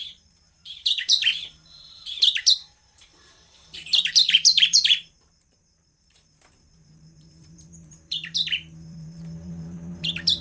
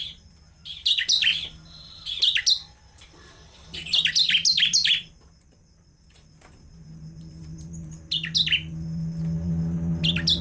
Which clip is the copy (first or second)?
first